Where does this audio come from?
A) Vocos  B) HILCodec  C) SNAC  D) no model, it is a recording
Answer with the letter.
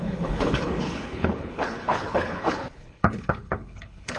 B